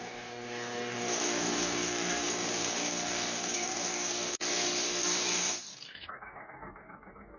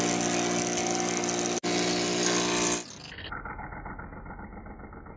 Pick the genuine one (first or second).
second